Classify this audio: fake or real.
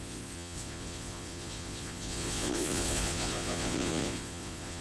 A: fake